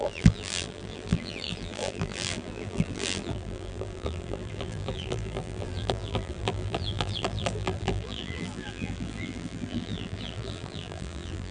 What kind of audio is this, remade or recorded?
remade